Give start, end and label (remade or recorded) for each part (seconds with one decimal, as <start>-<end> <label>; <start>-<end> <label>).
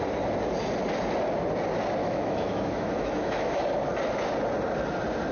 0.0-2.0 recorded; 2.0-3.6 remade; 3.6-5.3 recorded